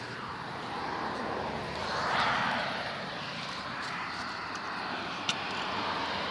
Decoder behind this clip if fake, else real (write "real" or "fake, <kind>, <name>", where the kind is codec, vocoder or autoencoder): fake, vocoder, BigVGAN v2